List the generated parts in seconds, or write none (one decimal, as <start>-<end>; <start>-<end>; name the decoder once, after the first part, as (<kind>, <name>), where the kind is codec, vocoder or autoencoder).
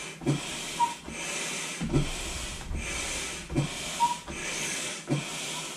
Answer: 4.4-5.1 (codec, DAC)